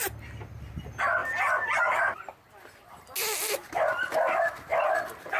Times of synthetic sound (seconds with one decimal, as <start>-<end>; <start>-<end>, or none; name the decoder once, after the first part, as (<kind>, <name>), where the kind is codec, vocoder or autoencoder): none